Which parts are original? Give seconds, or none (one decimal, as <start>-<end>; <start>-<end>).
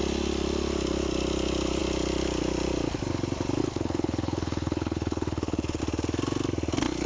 0.0-3.6; 5.8-7.1